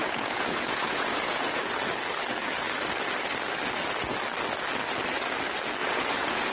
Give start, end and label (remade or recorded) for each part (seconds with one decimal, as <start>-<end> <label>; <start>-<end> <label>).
0.0-1.6 remade; 1.6-5.8 recorded; 5.8-6.5 remade